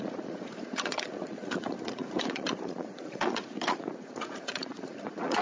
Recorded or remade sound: remade